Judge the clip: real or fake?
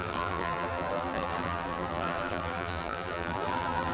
fake